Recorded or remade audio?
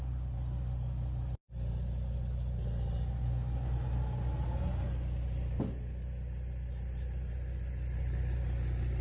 recorded